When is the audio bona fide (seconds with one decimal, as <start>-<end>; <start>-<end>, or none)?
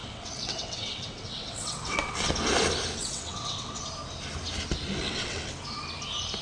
2.3-3.0; 3.8-5.0; 5.5-6.4